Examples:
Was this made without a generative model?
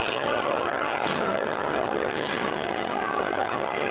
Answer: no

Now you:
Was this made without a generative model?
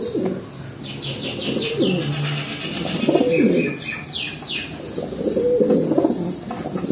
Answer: yes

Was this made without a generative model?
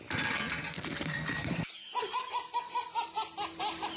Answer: yes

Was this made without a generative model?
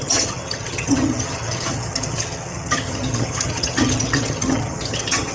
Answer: no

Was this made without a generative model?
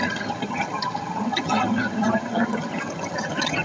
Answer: no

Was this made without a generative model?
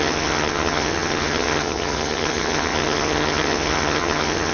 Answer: no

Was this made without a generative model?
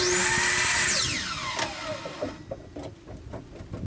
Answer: yes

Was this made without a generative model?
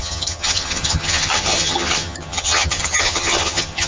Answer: no